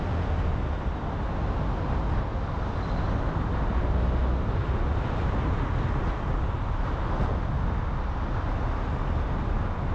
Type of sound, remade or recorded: recorded